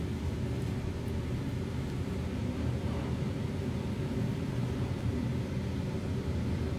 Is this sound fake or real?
real